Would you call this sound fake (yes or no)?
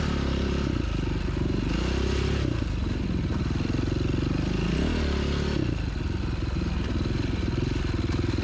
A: no